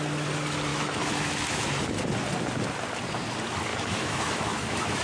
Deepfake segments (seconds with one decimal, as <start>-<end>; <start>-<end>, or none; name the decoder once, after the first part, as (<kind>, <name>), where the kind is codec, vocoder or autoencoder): 0.7-2.0 (autoencoder, DAC-VAE); 3.7-5.0